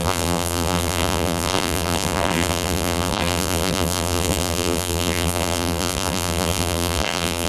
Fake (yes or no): yes